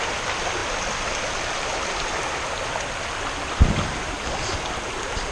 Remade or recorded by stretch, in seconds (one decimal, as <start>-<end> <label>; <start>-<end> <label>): 0.0-5.3 recorded